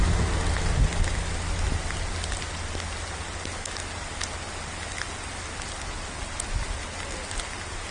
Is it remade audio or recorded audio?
recorded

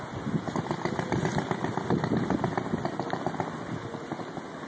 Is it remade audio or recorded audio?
recorded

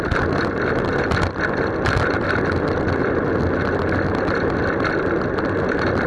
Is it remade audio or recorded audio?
recorded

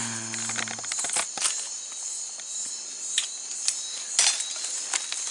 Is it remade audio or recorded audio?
recorded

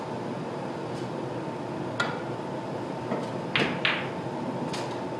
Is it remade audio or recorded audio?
recorded